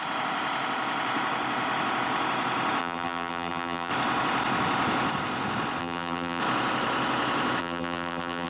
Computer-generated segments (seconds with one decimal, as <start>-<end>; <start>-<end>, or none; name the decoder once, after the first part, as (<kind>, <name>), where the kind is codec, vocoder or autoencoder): 2.8-3.9 (vocoder, BigVGAN v2); 5.8-6.4; 7.6-8.5